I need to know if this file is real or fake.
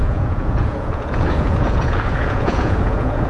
fake